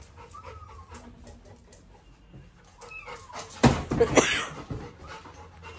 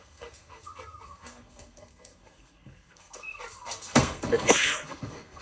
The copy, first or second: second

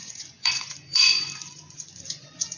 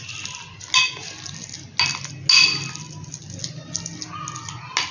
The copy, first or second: first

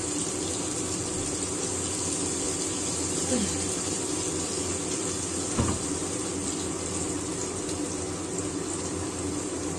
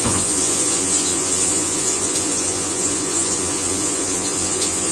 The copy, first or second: second